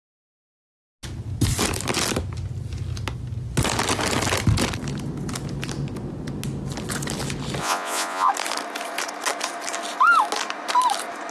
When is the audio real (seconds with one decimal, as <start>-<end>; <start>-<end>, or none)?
0.0-7.6; 8.3-11.3